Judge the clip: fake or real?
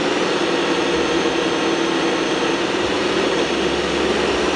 real